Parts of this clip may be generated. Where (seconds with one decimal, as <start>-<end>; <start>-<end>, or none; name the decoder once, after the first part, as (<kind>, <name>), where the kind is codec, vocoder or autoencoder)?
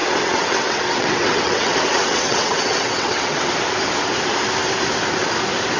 0.0-3.5 (vocoder, WaveNeXt)